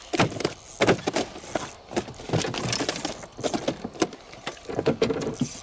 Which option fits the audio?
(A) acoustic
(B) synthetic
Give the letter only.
A